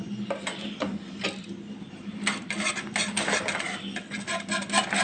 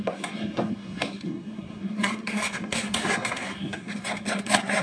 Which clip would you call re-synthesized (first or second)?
second